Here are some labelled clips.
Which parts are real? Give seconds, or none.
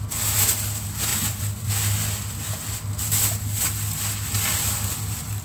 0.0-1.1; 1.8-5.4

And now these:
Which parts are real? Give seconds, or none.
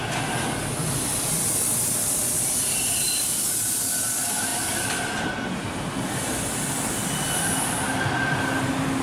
0.0-9.0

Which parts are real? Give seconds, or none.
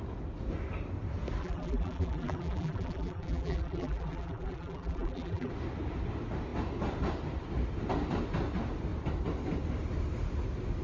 0.0-1.4; 5.5-10.8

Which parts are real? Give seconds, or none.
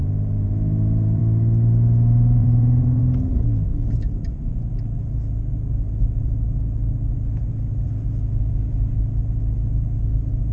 1.2-2.4; 3.0-10.5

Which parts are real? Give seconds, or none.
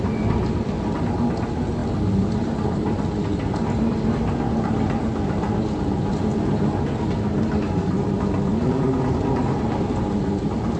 0.0-10.8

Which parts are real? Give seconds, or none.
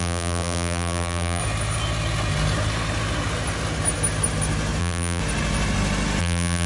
1.4-4.8; 5.2-6.2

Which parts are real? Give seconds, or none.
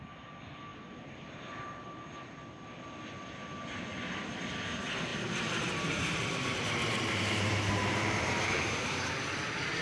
0.0-0.7; 1.5-5.1; 9.1-9.8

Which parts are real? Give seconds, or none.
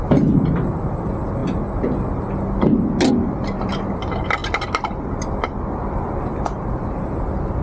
1.4-3.1; 4.4-6.2